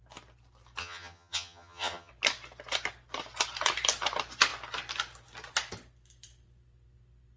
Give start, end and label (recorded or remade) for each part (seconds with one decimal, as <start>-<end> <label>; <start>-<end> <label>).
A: 0.0-0.8 recorded; 0.8-2.1 remade; 2.1-7.4 recorded